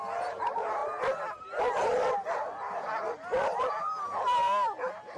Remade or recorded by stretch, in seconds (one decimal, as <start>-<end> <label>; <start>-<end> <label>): 0.0-5.2 remade